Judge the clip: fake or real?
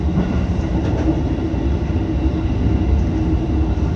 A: real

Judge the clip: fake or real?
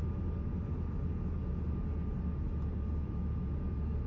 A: real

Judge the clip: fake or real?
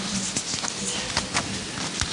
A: real